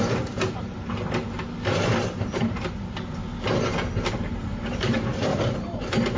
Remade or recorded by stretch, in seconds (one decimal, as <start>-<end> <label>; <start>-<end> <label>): 0.0-3.2 remade; 3.2-4.1 recorded; 4.1-5.3 remade; 5.3-6.2 recorded